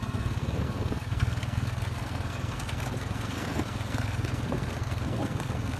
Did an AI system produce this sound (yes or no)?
yes